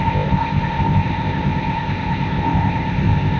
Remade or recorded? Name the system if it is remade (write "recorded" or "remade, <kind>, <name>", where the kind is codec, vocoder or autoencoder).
remade, codec, ZipCodec